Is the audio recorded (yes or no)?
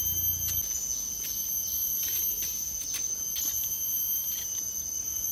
yes